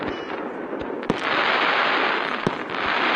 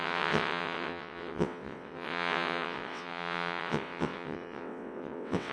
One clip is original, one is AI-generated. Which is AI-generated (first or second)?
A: second